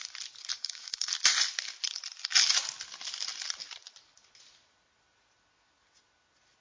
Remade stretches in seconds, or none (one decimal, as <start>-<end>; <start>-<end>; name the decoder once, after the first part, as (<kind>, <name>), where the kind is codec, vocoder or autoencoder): 0.5-1.1 (codec, DAC)